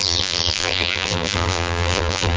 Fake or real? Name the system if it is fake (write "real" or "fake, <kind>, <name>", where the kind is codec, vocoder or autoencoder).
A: fake, vocoder, BigVGAN v2